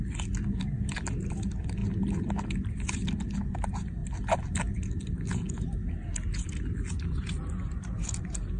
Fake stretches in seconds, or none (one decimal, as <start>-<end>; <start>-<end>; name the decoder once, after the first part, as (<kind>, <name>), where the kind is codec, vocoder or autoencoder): none